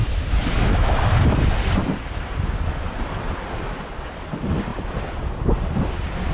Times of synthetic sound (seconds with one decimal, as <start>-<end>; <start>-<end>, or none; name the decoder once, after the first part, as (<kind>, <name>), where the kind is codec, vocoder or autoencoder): none